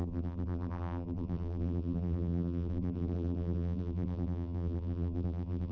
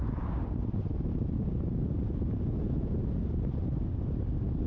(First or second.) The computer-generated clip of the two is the first